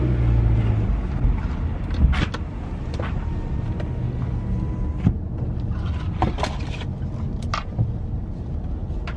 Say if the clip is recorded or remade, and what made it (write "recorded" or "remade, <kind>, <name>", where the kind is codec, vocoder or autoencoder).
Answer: recorded